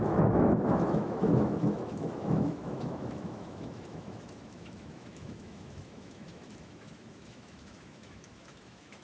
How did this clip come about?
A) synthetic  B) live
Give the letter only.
A